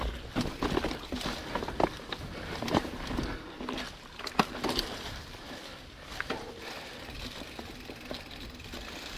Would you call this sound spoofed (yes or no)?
no